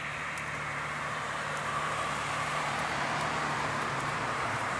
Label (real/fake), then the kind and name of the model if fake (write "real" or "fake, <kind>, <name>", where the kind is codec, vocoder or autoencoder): fake, vocoder, BigVGAN v2